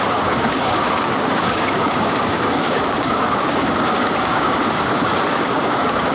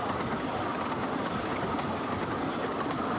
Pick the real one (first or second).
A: second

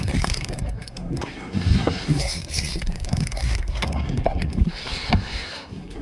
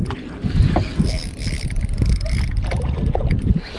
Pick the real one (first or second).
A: second